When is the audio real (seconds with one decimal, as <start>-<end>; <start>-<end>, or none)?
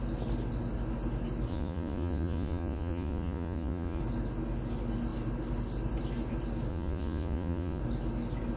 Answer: 0.0-1.5; 4.0-6.7; 7.8-8.6